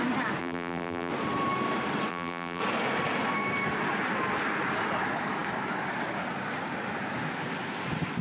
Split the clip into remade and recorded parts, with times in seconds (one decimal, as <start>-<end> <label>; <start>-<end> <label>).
0.0-0.4 recorded; 0.4-1.1 remade; 1.1-2.1 recorded; 2.1-2.6 remade; 2.6-8.2 recorded